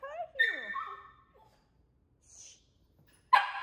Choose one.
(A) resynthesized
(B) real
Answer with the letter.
B